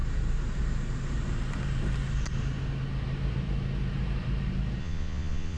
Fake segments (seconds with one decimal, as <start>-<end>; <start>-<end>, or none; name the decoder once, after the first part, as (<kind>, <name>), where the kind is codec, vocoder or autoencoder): 4.8-5.6 (vocoder, Vocos)